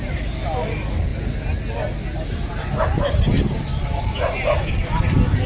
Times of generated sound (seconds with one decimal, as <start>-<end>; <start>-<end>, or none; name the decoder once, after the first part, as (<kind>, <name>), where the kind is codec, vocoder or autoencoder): none